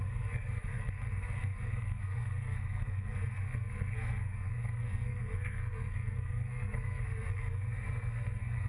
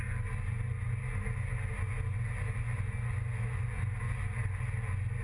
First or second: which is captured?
second